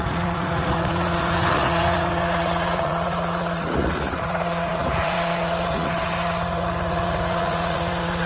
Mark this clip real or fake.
fake